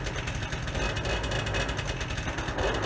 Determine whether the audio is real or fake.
real